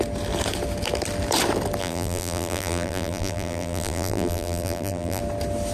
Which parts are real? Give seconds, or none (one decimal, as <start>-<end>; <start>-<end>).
0.0-1.8; 5.2-5.7